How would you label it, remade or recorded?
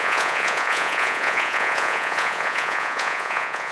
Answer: remade